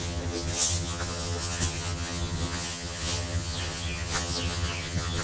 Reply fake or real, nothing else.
fake